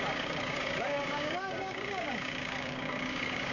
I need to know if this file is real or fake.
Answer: fake